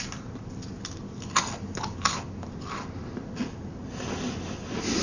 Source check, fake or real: real